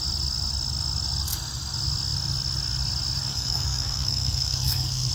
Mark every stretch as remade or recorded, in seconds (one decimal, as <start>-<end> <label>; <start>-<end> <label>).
0.0-3.3 recorded; 3.3-5.1 remade